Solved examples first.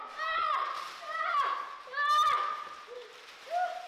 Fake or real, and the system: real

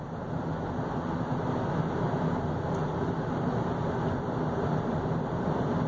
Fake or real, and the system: real